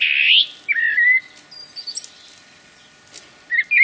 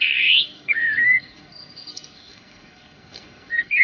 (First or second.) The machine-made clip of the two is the second